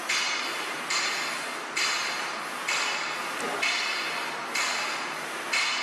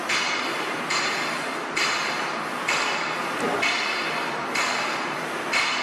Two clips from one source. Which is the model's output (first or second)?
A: second